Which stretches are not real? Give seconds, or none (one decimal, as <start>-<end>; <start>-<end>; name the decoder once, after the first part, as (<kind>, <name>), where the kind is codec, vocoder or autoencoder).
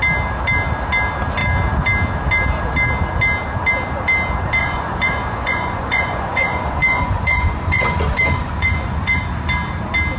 4.6-9.2 (vocoder, Vocos)